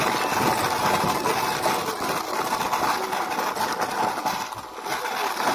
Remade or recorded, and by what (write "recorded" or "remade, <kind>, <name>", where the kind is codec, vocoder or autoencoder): recorded